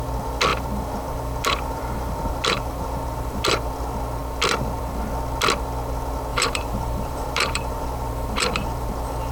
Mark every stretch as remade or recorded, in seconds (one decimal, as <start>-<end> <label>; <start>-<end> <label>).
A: 0.0-0.5 recorded; 0.5-3.6 remade; 3.6-6.3 recorded; 6.3-8.9 remade; 8.9-9.3 recorded